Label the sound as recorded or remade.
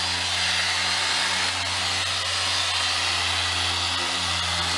recorded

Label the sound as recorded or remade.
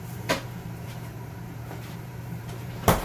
remade